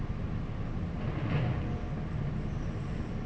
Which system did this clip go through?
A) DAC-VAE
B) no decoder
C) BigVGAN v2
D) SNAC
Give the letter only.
B